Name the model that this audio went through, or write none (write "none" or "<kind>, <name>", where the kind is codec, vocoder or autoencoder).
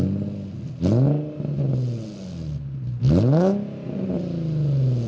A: none